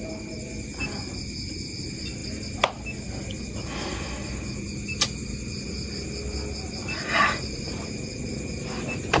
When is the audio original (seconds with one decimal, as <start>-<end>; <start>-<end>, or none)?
0.0-6.8; 7.9-9.2

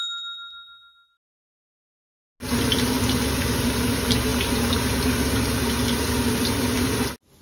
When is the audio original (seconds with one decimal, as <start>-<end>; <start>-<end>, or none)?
0.0-7.4

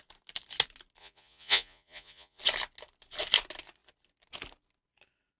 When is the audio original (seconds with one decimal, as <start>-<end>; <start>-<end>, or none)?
0.0-1.0; 2.4-5.4

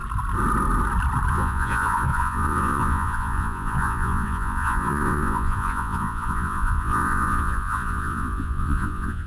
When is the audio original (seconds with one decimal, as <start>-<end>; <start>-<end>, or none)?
0.0-1.3

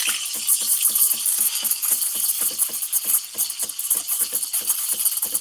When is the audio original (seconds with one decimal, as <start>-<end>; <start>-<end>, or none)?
0.0-1.2; 1.9-5.4